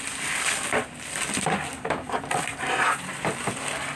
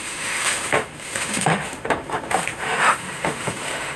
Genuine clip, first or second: first